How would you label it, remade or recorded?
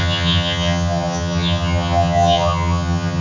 remade